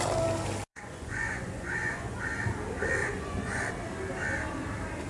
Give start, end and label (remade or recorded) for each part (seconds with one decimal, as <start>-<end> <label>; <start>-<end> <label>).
0.0-0.7 recorded; 0.7-2.2 remade; 2.2-3.0 recorded; 3.0-3.6 remade; 3.6-5.1 recorded